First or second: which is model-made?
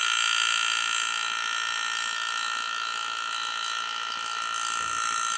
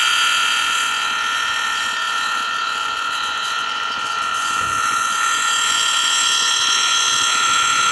second